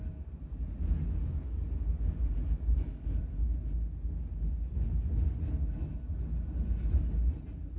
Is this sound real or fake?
real